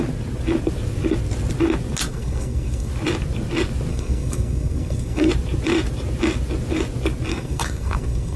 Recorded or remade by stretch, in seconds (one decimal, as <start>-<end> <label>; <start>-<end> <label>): 0.0-2.1 recorded; 2.1-2.9 remade; 2.9-3.9 recorded; 3.9-5.3 remade; 5.3-7.3 recorded; 7.3-8.4 remade